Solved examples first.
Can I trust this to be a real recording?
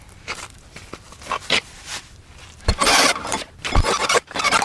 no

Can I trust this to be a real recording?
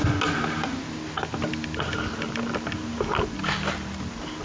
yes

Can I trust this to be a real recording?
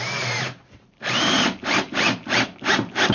no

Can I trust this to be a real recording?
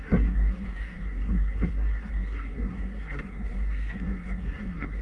no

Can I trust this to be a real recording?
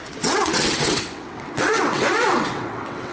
no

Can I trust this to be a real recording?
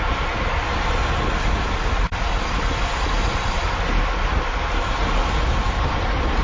yes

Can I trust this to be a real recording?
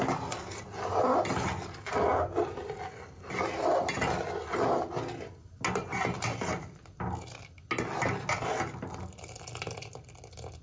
yes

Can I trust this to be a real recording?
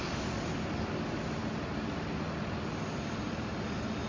yes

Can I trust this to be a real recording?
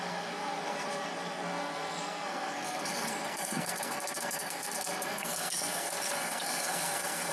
no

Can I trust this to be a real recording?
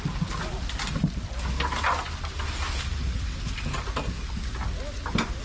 yes